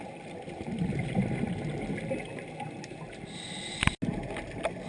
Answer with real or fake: real